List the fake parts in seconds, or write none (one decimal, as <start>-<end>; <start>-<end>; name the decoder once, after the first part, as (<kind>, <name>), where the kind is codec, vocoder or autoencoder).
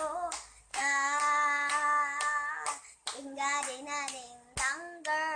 0.7-1.2 (autoencoder, DAC-VAE)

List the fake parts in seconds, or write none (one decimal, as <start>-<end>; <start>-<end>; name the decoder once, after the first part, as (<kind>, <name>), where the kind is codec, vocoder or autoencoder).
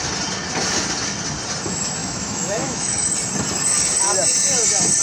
2.0-3.1 (autoencoder, DAC-VAE)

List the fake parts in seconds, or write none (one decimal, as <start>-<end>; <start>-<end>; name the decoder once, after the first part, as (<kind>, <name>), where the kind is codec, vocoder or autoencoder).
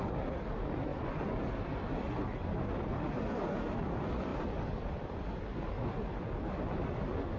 none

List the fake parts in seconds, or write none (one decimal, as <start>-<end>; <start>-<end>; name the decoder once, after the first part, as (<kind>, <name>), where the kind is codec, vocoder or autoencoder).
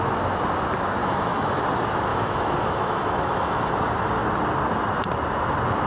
1.0-1.6 (autoencoder, DAC-VAE); 2.1-3.7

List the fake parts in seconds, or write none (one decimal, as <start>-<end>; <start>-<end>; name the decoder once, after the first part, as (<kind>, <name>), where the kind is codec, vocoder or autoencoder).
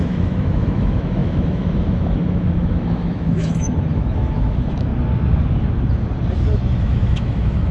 0.0-4.9 (autoencoder, DAC-VAE); 6.8-7.7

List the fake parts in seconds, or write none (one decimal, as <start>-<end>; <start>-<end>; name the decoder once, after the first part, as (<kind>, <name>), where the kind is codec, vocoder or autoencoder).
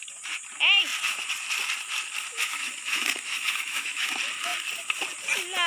2.3-4.1 (autoencoder, DAC-VAE)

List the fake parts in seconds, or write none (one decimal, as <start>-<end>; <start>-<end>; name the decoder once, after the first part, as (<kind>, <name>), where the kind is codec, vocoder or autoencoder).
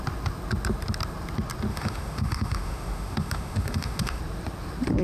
1.7-4.2 (autoencoder, DAC-VAE)